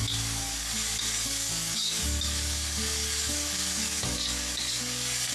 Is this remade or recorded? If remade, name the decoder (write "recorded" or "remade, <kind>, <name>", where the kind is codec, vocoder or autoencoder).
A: remade, codec, DAC